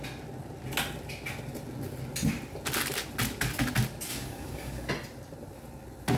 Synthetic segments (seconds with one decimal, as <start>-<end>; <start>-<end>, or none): 4.1-4.9